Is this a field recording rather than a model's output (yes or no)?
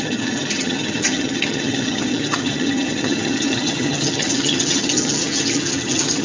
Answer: no